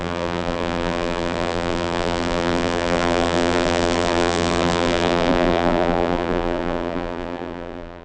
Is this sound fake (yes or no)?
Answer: yes